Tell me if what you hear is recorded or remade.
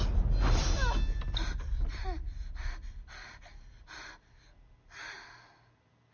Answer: recorded